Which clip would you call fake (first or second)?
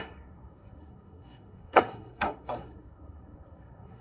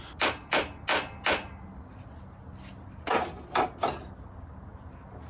first